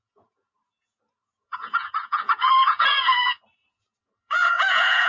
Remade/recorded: remade